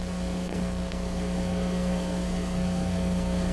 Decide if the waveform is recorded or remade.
remade